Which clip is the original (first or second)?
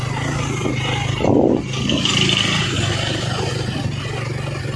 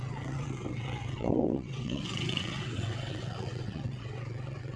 first